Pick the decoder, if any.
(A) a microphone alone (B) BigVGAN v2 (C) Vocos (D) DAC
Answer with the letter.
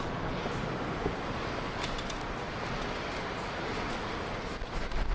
A